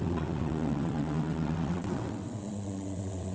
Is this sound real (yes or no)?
no